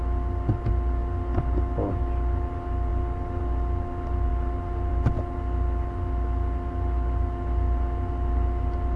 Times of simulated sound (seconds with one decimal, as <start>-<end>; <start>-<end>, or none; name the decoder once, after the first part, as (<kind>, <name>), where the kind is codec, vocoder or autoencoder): none